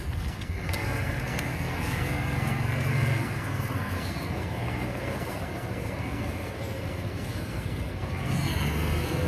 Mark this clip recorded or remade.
remade